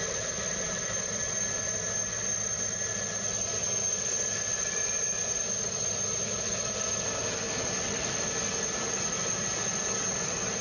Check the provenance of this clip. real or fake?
real